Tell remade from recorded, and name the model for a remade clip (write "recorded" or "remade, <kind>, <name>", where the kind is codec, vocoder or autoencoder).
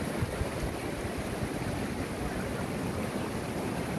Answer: recorded